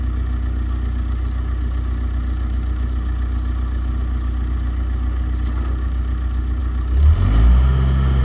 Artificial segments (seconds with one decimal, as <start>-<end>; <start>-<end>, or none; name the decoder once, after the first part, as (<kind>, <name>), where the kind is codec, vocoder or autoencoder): none